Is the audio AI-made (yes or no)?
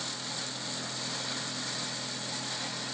no